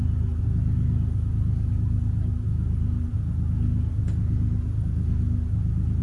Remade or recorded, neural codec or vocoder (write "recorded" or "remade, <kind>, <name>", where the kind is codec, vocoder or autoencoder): recorded